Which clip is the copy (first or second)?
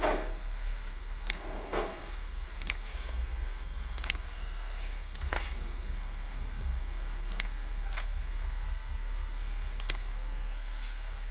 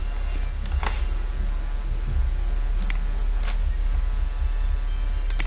first